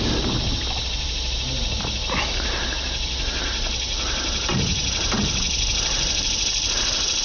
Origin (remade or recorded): remade